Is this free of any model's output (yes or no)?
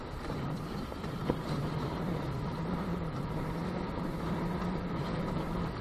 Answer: no